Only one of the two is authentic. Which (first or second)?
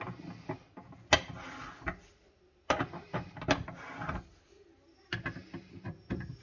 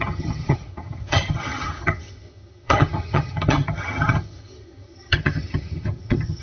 first